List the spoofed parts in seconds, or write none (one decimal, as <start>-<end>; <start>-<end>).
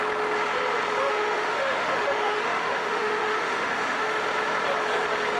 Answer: 1.0-4.2